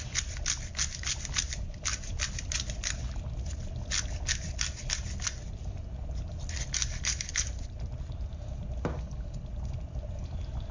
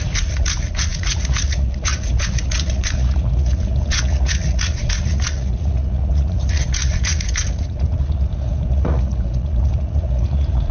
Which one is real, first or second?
first